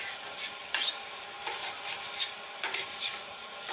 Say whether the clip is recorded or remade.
recorded